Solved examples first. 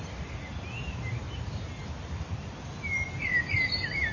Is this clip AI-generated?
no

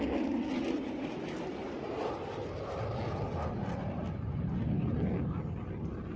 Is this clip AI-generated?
no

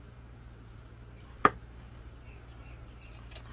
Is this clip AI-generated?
yes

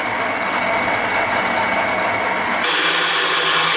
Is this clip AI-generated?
no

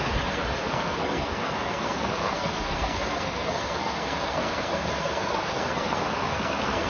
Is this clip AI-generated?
yes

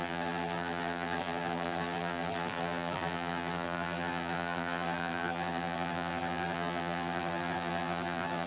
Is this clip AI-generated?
yes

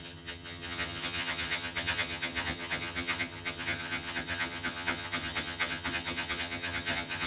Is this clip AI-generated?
yes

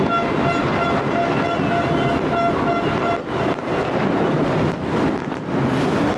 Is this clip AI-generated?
no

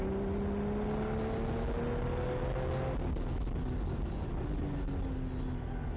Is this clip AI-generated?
no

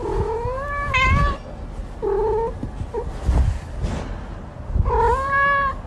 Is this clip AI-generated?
no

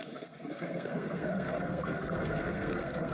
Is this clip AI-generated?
yes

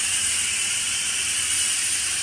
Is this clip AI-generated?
no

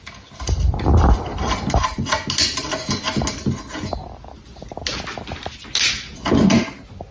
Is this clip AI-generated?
no